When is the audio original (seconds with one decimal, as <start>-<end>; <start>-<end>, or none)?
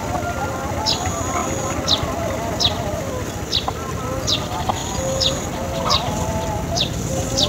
0.5-7.5